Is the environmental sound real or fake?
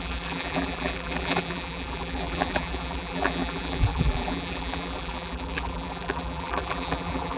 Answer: fake